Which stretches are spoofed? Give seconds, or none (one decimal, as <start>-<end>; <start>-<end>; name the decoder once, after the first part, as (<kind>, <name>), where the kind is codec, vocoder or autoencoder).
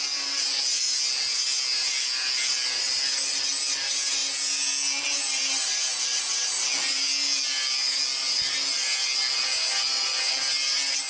none